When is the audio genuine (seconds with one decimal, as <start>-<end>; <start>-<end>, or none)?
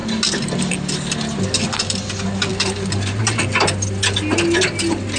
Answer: 0.0-5.2